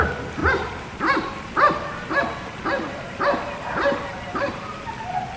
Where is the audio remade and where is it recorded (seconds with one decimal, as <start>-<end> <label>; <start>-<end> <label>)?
0.0-0.4 recorded; 0.4-1.4 remade; 1.4-4.1 recorded; 4.1-4.8 remade; 4.8-5.4 recorded